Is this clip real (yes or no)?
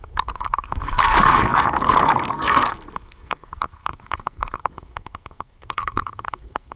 no